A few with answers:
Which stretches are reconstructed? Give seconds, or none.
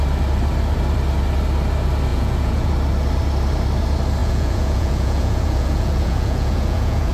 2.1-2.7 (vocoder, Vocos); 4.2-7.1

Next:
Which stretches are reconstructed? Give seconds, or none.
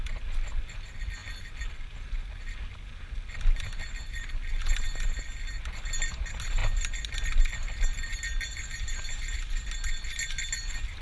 none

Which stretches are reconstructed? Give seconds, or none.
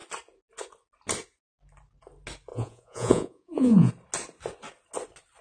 2.5-3.9 (vocoder, Vocos)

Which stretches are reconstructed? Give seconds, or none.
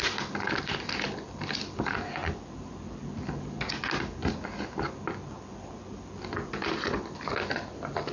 none